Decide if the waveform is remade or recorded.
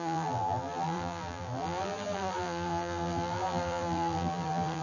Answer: remade